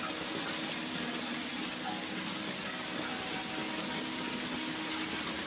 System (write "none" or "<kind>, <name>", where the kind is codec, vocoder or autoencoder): none